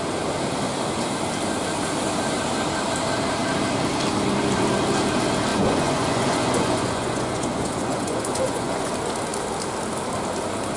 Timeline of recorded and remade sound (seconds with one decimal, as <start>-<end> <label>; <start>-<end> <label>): 0.0-5.5 recorded; 5.5-8.9 remade; 8.9-10.8 recorded